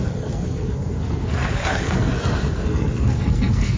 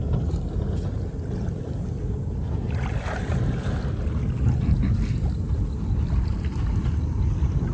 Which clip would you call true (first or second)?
second